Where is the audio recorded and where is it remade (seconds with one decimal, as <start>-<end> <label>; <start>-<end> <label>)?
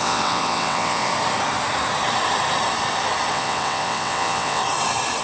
0.0-1.1 remade; 1.1-3.3 recorded; 3.3-4.6 remade; 4.6-5.2 recorded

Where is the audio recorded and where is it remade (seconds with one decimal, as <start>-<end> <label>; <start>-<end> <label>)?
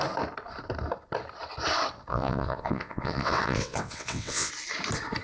0.0-2.1 recorded; 2.1-4.5 remade; 4.5-5.2 recorded